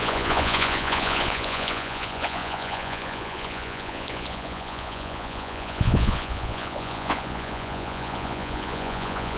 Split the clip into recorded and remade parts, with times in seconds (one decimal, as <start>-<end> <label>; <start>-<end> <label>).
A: 0.0-9.4 remade